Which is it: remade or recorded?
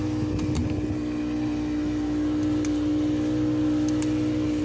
recorded